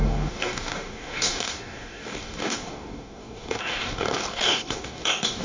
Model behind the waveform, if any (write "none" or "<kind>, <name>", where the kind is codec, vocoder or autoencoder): codec, DAC